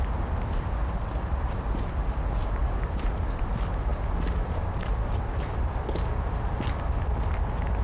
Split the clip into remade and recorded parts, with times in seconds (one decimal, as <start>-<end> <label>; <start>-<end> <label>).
0.0-0.8 recorded; 0.8-1.8 remade; 1.8-2.4 recorded; 2.4-3.2 remade; 3.2-3.9 recorded; 3.9-5.9 remade; 5.9-7.8 recorded